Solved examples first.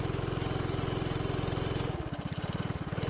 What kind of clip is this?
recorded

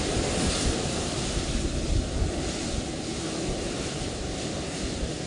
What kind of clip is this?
recorded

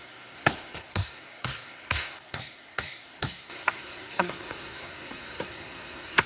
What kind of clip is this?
remade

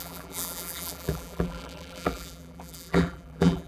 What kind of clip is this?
remade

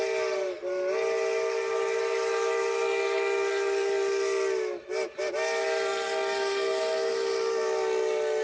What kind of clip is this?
recorded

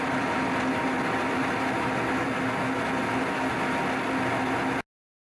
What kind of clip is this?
recorded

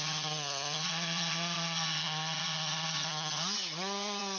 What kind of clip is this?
remade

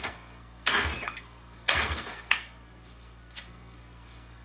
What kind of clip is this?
remade